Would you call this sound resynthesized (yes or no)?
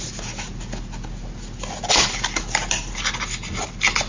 no